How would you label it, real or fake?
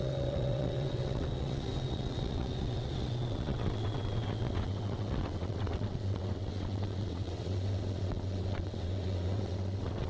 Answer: fake